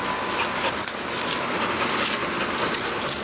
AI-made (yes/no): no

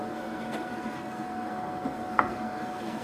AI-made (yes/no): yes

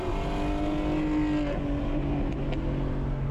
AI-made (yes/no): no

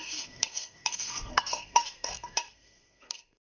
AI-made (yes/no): yes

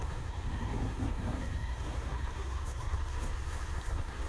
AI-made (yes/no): yes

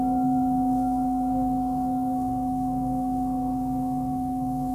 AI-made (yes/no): yes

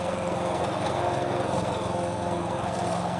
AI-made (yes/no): yes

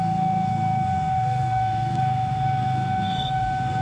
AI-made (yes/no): yes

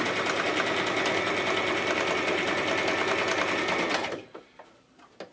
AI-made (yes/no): no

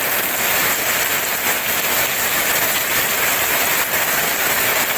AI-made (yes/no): no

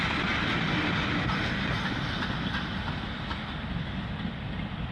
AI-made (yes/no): no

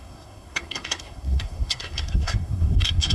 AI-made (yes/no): yes